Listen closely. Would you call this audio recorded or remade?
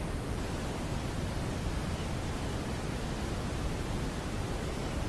recorded